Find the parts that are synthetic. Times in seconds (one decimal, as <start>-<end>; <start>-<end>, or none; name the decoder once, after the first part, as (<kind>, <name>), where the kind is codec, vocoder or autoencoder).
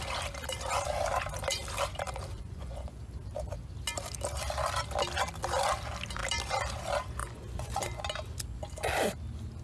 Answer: 2.3-3.0 (vocoder, Vocos); 7.2-8.0